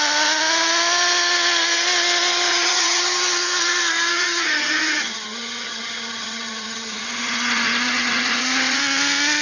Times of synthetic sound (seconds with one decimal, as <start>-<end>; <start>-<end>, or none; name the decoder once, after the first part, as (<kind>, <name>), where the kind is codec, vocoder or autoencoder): 2.5-3.0 (vocoder, HiFi-GAN); 4.1-8.8